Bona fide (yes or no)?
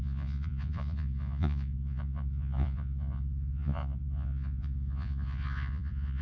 no